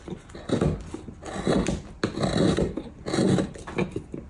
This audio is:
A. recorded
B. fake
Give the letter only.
A